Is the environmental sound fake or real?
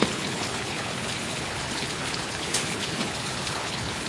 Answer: fake